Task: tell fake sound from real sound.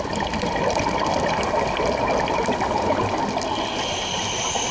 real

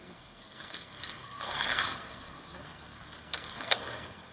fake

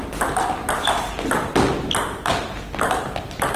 real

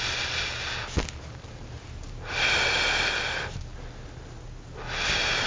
real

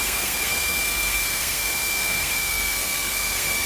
fake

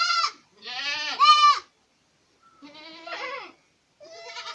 real